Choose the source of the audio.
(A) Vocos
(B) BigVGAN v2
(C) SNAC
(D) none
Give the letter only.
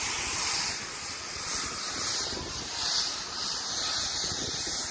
B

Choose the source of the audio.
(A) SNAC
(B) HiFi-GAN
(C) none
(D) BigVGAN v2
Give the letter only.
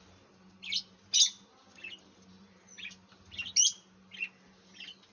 C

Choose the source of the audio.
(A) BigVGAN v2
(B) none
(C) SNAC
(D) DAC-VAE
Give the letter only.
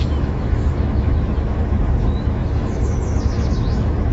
D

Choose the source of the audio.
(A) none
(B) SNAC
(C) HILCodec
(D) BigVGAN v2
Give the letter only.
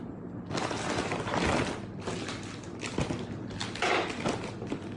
A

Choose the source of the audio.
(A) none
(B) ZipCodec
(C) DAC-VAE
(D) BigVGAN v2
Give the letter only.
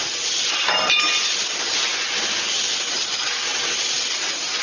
A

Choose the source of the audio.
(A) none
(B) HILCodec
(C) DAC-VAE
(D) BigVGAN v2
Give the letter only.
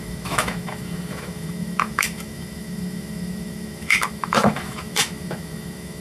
C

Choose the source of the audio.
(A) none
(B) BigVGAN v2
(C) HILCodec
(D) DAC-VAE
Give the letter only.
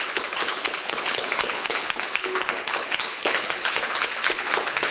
C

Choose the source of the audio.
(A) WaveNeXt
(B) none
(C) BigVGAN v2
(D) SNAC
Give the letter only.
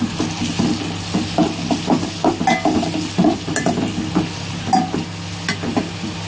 B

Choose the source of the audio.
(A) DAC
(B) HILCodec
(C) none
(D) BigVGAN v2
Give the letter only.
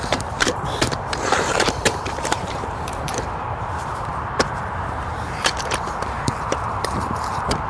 D